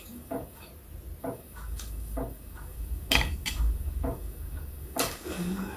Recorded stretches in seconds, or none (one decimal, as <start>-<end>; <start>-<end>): 0.7-1.2

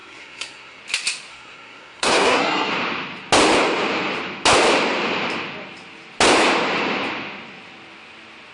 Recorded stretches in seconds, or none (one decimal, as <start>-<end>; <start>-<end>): 0.8-1.3; 2.7-8.5

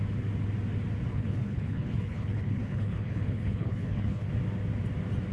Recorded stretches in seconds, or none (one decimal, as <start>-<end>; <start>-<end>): 0.0-1.1; 4.3-5.3

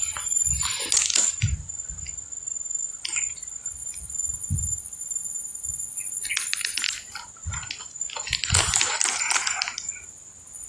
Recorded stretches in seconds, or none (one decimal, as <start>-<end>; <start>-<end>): 0.0-10.7

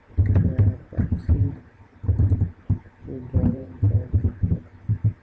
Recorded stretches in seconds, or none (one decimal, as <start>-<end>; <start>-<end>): 0.0-1.3; 2.8-3.5; 4.5-5.2

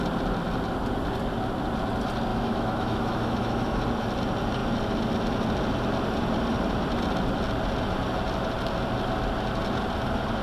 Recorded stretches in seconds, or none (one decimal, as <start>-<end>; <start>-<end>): 0.0-2.3; 3.8-10.4